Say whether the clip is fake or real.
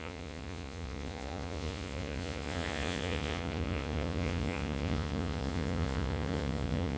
fake